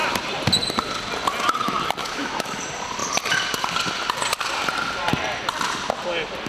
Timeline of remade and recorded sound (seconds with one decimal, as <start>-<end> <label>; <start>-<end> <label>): 0.0-2.0 recorded; 2.0-2.6 remade; 2.6-6.5 recorded